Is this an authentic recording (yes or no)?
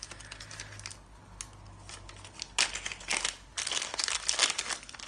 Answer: yes